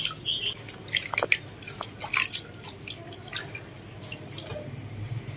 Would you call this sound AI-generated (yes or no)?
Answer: no